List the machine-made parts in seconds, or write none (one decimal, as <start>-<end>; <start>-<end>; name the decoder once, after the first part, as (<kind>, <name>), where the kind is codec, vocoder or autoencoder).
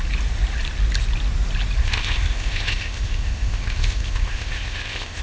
1.8-5.2 (codec, ZipCodec)